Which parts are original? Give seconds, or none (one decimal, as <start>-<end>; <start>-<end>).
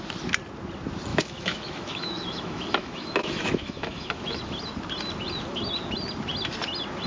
0.0-1.1; 4.4-7.1